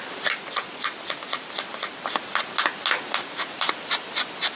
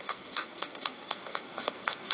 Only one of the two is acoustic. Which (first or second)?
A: first